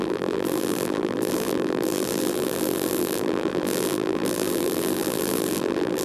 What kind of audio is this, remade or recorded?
remade